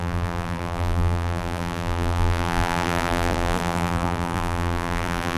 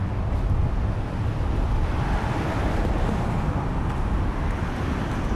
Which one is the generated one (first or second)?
first